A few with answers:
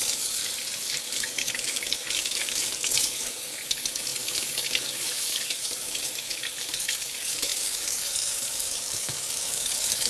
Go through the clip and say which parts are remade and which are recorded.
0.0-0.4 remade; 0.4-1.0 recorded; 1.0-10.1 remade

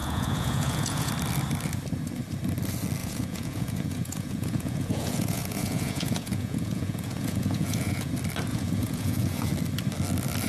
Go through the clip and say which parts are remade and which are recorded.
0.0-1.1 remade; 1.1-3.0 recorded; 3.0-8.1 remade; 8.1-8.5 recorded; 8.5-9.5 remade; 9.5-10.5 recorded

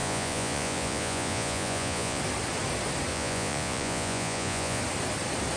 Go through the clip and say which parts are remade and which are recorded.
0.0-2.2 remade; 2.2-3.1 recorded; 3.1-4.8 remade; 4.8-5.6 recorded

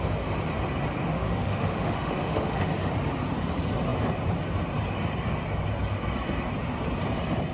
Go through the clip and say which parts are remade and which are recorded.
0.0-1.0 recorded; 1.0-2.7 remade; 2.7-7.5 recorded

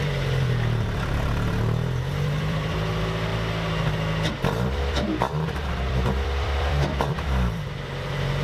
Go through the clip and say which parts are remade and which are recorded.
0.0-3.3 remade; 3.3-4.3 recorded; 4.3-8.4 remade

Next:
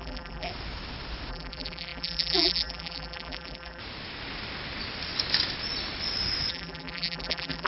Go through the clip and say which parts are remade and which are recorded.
0.0-0.5 remade; 0.5-1.3 recorded; 1.3-3.8 remade; 3.8-6.5 recorded; 6.5-7.7 remade

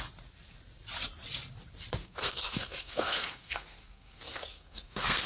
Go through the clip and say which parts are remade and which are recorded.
0.0-2.0 recorded; 2.0-5.3 remade